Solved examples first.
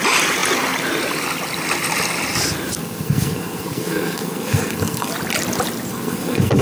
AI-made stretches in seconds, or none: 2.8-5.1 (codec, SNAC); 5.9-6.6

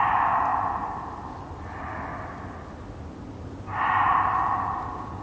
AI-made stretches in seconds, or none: none

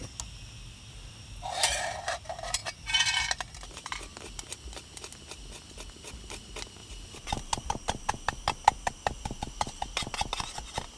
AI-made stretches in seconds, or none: none

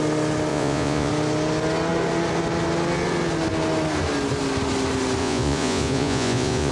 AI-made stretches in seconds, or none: 0.5-1.1 (vocoder, Vocos); 5.2-6.7

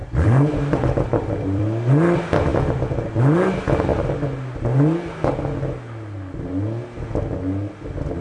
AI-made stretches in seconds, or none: 0.0-1.6 (vocoder, BigVGAN v2); 2.5-3.1

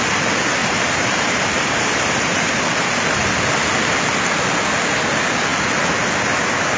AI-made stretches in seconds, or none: 0.6-2.6 (vocoder, BigVGAN v2)